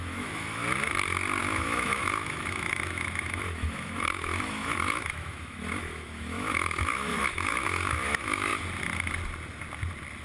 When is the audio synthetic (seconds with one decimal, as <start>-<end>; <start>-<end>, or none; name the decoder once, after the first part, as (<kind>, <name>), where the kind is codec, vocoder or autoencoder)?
0.0-0.6 (autoencoder, DAC-VAE); 1.4-8.5